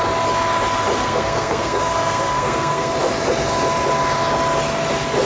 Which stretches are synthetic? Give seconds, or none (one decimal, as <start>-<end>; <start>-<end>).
1.0-2.9